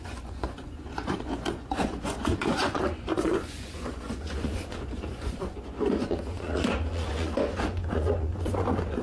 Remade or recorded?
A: remade